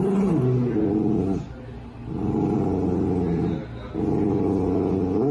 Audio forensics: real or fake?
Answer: real